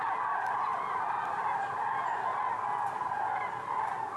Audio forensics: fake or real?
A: real